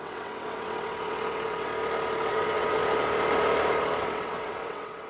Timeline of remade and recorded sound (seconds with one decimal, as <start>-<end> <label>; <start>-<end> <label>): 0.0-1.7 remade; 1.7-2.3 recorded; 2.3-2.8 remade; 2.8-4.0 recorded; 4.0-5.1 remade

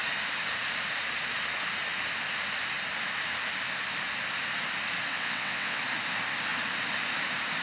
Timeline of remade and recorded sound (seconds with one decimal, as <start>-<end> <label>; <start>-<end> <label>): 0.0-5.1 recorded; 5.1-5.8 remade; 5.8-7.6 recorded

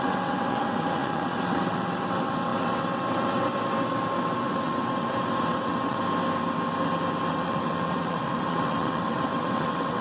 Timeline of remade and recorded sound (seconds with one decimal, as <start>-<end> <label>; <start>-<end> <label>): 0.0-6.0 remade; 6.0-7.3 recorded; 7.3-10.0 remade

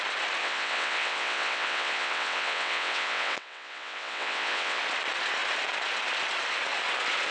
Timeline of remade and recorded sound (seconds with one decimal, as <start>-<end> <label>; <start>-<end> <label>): 0.0-0.4 recorded; 0.4-4.8 remade; 4.8-7.3 recorded

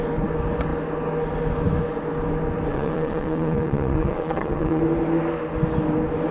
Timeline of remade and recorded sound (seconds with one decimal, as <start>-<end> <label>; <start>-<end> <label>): 0.0-2.7 recorded; 2.7-4.8 remade; 4.8-6.3 recorded